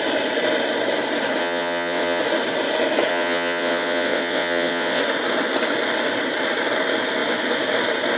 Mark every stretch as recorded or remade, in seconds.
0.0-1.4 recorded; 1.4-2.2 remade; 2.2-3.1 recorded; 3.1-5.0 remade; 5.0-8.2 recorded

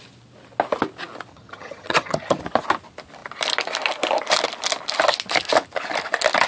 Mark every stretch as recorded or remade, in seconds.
0.0-1.3 recorded; 1.3-2.4 remade; 2.4-6.5 recorded

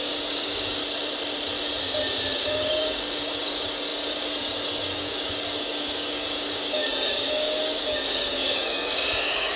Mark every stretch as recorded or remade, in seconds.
0.0-0.8 remade; 0.8-2.4 recorded; 2.4-9.6 remade

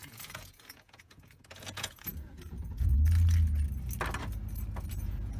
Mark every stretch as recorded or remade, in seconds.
0.0-2.9 remade; 2.9-4.9 recorded; 4.9-5.4 remade

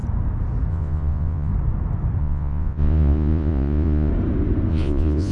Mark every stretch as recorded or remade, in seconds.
0.0-0.7 recorded; 0.7-1.5 remade; 1.5-2.2 recorded; 2.2-4.1 remade; 4.1-4.7 recorded; 4.7-5.3 remade

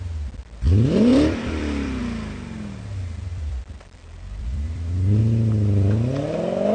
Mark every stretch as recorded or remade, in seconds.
0.0-1.1 recorded; 1.1-2.0 remade; 2.0-3.3 recorded; 3.3-5.2 remade; 5.2-6.7 recorded